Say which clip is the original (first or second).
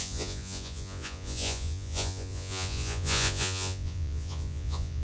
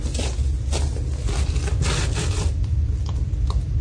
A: second